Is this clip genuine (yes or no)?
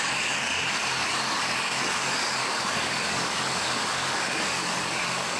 no